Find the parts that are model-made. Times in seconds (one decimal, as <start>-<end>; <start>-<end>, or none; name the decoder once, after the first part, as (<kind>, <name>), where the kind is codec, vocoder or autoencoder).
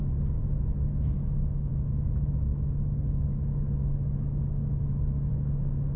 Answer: 0.9-6.0 (autoencoder, DAC-VAE)